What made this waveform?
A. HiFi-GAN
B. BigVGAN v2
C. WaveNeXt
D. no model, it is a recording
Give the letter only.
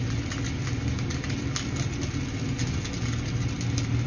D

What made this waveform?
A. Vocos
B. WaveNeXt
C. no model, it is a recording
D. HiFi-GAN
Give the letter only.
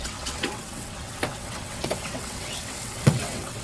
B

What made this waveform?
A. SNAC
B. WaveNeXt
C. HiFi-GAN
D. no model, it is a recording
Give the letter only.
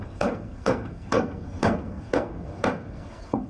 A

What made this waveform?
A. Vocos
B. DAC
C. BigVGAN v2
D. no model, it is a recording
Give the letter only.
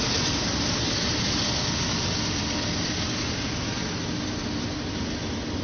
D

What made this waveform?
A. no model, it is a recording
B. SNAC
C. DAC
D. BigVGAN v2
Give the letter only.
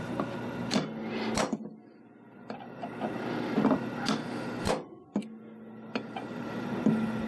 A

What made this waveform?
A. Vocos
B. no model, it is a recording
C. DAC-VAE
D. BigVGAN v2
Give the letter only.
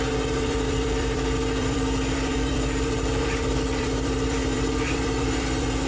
D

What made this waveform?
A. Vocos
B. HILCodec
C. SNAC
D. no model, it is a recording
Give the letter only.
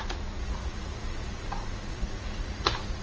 A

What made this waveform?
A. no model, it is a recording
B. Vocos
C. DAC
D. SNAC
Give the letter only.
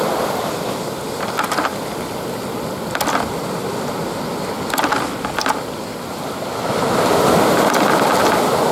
A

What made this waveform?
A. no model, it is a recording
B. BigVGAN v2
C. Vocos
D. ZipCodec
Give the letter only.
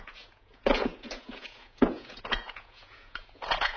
C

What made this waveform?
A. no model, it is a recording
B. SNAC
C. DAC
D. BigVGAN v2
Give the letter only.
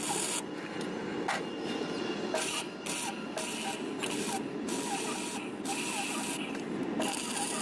A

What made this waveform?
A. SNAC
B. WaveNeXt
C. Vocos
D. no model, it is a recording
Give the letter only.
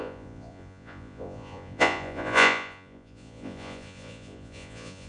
C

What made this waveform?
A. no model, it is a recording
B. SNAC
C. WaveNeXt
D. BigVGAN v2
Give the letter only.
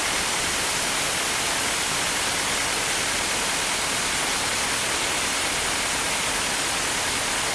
A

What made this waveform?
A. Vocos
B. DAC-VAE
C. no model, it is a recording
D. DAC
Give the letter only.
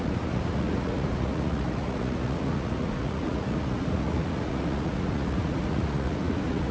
A